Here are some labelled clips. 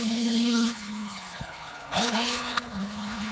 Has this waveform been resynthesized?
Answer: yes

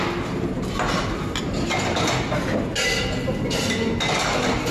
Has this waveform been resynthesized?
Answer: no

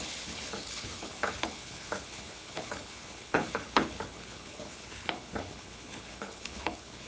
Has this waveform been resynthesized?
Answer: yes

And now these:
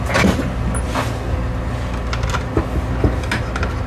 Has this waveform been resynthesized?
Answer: no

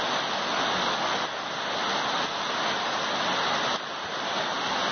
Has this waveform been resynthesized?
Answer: no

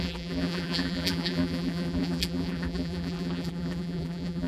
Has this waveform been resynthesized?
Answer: yes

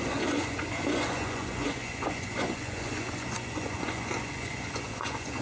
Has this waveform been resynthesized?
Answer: yes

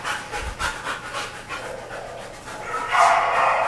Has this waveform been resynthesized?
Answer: no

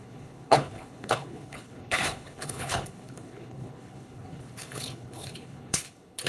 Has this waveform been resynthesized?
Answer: yes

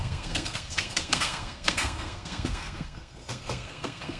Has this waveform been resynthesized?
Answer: yes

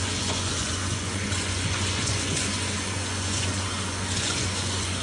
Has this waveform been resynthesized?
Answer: yes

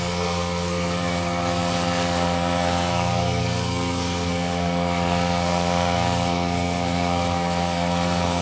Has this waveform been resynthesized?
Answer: yes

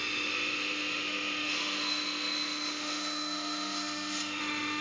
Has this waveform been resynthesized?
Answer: yes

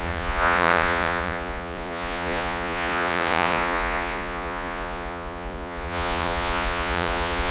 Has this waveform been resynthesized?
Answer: yes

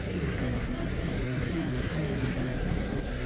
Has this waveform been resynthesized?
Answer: yes